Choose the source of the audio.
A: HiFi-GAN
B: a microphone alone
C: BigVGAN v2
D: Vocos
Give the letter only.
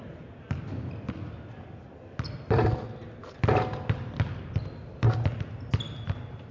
B